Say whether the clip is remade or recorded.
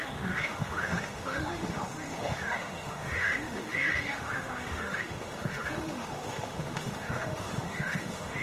remade